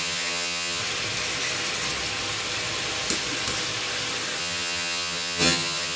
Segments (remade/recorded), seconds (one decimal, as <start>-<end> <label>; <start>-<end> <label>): 0.0-0.8 remade; 0.8-4.4 recorded; 4.4-6.0 remade